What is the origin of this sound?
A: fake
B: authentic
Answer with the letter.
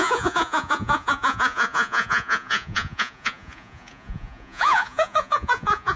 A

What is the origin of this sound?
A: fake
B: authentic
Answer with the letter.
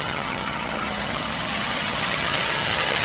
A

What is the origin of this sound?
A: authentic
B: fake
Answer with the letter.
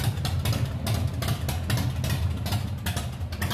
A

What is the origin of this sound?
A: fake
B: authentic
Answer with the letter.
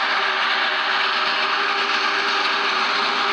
B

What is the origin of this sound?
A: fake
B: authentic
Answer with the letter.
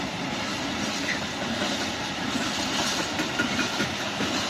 B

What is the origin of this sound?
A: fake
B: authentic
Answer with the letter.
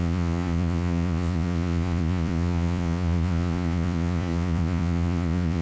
A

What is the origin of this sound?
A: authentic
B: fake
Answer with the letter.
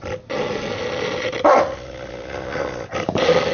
A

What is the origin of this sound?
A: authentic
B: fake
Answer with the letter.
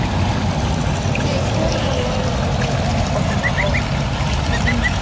A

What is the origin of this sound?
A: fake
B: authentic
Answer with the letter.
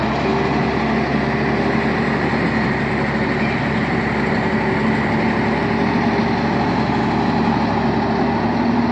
B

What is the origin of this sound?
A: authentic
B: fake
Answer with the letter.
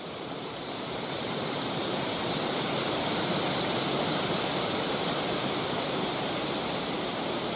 B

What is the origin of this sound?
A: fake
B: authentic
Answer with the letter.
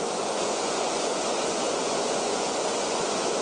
A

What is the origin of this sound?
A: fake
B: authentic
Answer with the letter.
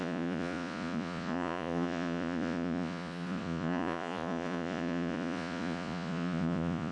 A